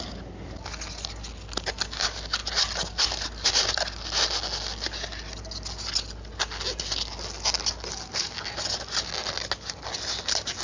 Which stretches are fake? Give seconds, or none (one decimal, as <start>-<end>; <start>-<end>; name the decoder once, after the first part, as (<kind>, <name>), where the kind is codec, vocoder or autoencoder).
none